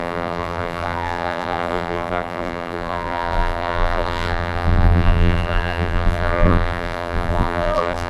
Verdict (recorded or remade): remade